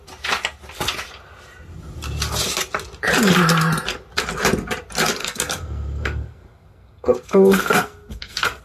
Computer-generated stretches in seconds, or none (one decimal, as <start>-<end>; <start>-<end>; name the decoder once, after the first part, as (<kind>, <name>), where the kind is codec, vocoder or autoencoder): 5.2-8.6 (codec, SNAC)